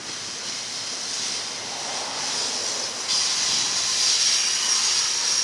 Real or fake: real